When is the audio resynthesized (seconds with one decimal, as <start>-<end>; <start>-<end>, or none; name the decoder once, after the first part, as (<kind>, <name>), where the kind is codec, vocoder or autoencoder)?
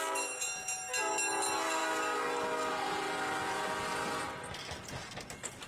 none